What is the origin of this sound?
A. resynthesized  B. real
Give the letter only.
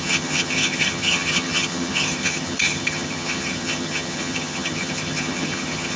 A